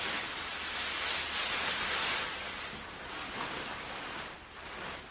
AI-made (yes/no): no